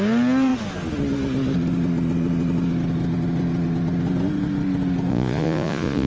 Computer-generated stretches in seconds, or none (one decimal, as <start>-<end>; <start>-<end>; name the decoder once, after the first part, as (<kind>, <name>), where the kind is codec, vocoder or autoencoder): 5.1-6.1 (vocoder, Vocos)